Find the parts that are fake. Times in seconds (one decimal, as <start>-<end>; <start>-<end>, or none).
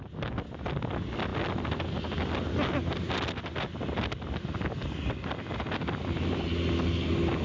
none